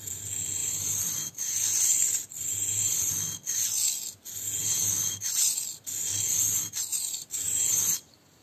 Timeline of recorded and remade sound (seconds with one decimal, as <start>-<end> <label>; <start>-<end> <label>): 0.0-0.6 recorded; 0.6-3.1 remade; 3.1-6.9 recorded; 6.9-7.6 remade; 7.6-8.4 recorded